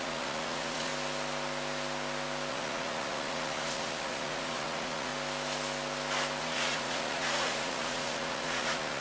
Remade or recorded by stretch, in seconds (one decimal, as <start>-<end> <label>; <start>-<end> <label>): 0.0-0.9 remade; 0.9-2.5 recorded; 2.5-5.1 remade; 5.1-6.4 recorded; 6.4-9.0 remade

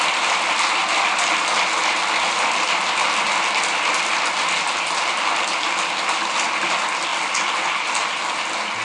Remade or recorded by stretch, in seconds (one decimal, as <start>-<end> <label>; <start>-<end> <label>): 0.0-8.8 recorded

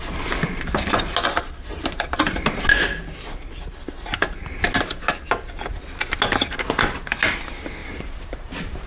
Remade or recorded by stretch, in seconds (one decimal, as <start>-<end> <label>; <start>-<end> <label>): 0.0-7.8 recorded; 7.8-8.9 remade

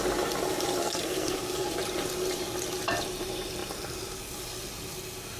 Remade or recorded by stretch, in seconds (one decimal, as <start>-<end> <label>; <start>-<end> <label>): 0.0-0.8 recorded; 0.8-1.8 remade; 1.8-5.4 recorded

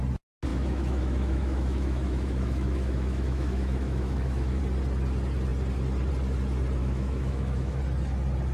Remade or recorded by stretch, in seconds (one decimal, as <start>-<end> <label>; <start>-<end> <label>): 0.0-0.5 recorded; 0.5-4.6 remade; 4.6-6.8 recorded; 6.8-7.8 remade; 7.8-8.5 recorded

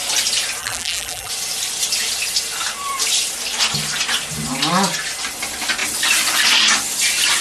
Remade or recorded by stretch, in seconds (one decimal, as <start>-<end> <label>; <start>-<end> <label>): 0.0-0.6 recorded; 0.6-1.3 remade; 1.3-7.4 recorded

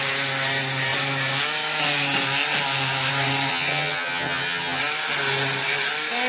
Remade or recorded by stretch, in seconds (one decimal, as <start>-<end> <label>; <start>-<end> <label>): 0.0-3.5 recorded; 3.5-4.8 remade; 4.8-6.3 recorded